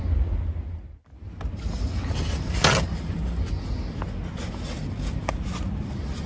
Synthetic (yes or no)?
no